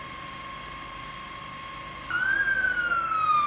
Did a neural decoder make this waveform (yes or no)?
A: no